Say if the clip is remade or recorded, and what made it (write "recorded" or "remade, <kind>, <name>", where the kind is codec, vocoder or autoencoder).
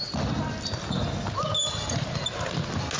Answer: recorded